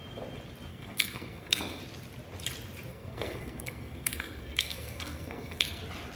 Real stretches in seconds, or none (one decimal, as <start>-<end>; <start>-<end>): 0.0-0.7; 1.8-2.9; 5.8-6.2